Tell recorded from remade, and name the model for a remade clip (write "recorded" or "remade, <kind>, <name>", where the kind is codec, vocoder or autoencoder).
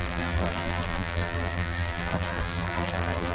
remade, vocoder, BigVGAN v2